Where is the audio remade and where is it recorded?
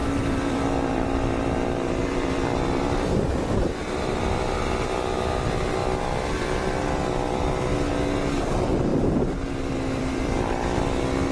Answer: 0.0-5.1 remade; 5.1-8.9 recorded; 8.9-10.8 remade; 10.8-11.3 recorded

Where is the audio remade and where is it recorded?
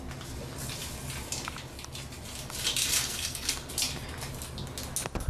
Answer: 0.0-3.0 recorded; 3.0-3.7 remade; 3.7-5.3 recorded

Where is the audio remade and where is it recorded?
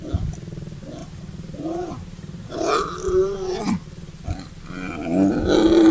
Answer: 0.0-1.0 recorded; 1.0-2.9 remade; 2.9-5.9 recorded